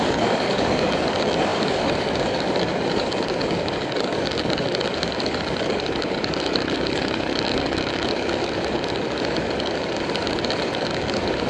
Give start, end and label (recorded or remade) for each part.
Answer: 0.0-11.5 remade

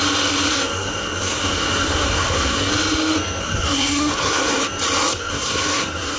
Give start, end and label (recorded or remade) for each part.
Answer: 0.0-0.5 recorded; 0.5-2.7 remade; 2.7-3.4 recorded; 3.4-4.6 remade; 4.6-5.1 recorded; 5.1-6.2 remade

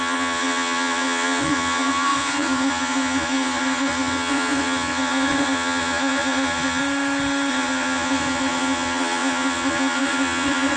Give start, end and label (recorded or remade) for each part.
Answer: 0.0-6.8 remade; 6.8-7.5 recorded; 7.5-10.8 remade

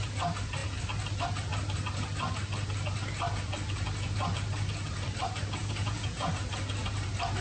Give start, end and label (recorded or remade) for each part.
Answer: 0.0-5.6 recorded; 5.6-6.3 remade; 6.3-7.4 recorded

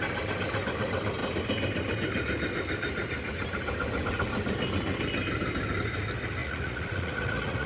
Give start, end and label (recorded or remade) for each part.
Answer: 0.0-6.4 recorded; 6.4-7.7 remade

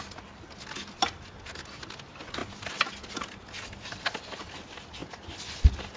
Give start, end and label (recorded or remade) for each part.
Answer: 0.0-6.0 recorded